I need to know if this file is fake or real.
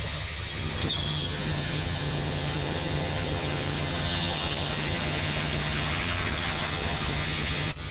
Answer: fake